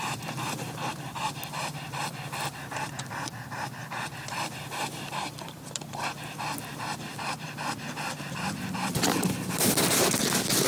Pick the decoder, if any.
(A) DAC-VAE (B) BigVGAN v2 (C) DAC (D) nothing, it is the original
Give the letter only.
B